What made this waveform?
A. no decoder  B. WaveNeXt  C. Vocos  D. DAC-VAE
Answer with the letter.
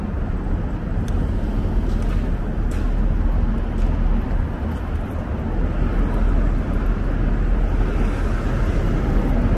A